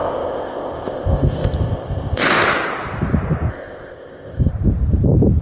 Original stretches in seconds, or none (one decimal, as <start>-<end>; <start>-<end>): 2.2-3.5; 4.5-5.4